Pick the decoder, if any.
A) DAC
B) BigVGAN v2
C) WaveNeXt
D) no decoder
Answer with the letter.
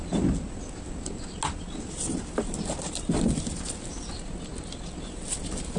D